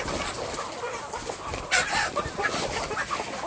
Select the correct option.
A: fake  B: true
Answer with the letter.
B